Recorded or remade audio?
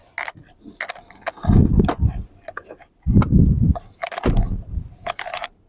recorded